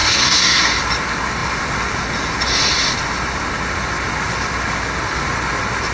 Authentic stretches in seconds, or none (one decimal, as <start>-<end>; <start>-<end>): 0.7-5.9